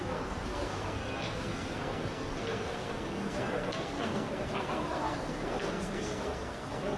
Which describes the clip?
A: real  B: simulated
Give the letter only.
B